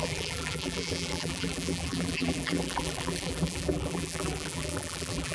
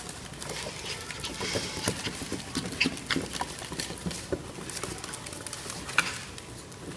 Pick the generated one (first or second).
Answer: first